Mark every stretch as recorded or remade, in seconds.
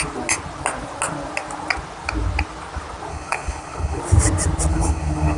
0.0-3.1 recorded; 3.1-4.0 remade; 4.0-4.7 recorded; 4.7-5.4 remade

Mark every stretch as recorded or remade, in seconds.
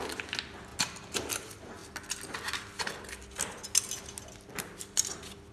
0.0-0.7 recorded; 0.7-1.3 remade; 1.3-5.5 recorded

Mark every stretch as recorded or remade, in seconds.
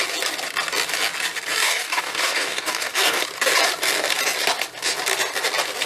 0.0-1.5 recorded; 1.5-3.2 remade; 3.2-5.9 recorded